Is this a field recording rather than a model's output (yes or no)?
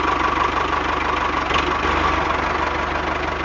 yes